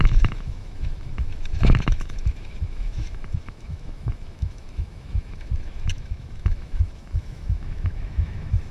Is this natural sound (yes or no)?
no